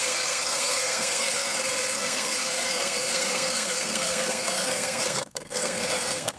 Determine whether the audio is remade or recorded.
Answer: remade